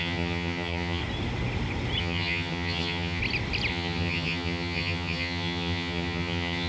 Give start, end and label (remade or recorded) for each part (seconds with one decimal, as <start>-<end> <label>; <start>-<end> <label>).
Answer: 0.0-1.0 remade; 1.0-2.0 recorded; 2.0-3.2 remade; 3.2-3.7 recorded; 3.7-6.7 remade